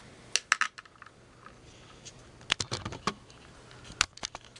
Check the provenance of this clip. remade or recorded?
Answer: recorded